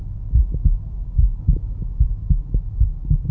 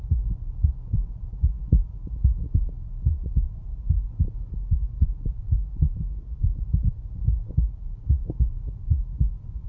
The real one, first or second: first